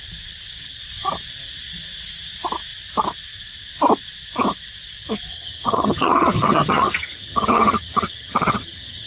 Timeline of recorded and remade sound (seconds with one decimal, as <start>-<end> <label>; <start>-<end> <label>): 0.0-5.3 recorded; 5.3-9.1 remade

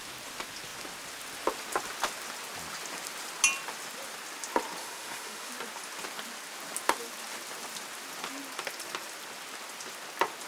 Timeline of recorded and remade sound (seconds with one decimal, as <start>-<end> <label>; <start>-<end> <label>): 0.0-4.8 recorded; 4.8-5.5 remade; 5.5-10.5 recorded

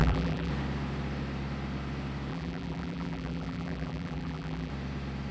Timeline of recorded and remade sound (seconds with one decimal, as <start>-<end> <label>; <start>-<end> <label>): 0.0-0.5 remade; 0.5-2.3 recorded; 2.3-4.7 remade; 4.7-5.3 recorded

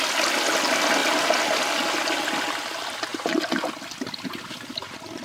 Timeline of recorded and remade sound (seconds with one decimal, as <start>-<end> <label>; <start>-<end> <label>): 0.0-5.2 recorded